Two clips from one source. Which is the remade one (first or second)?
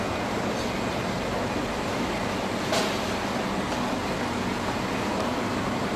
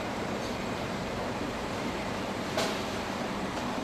second